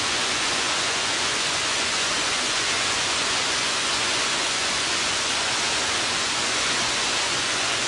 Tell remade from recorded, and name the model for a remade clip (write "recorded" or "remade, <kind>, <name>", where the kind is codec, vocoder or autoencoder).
remade, vocoder, Vocos